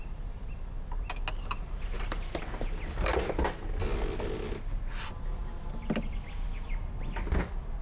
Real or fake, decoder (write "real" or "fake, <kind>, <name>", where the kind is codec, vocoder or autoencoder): real